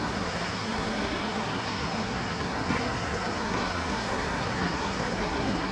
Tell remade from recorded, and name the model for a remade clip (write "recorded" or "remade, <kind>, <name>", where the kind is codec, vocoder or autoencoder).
remade, codec, SNAC